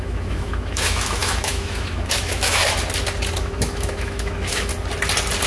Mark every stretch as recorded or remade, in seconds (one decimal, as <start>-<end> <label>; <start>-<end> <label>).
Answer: 0.0-2.6 remade; 2.6-3.4 recorded; 3.4-4.7 remade; 4.7-5.5 recorded